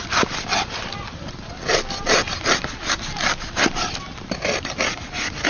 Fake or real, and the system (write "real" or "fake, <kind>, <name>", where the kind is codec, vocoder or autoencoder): real